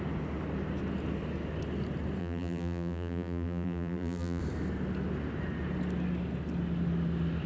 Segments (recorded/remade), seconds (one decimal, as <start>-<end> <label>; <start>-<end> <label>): 0.0-2.2 recorded; 2.2-4.4 remade; 4.4-7.5 recorded